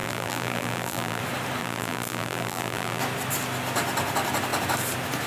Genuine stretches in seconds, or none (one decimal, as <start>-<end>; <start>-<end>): 1.2-1.6; 3.0-5.3